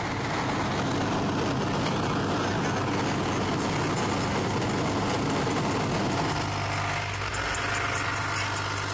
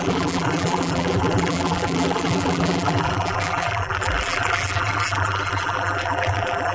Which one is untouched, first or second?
first